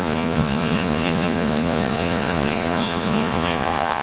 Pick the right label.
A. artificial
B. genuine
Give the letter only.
A